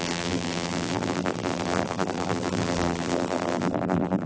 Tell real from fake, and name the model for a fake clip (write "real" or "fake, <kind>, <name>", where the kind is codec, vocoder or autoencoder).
fake, vocoder, BigVGAN v2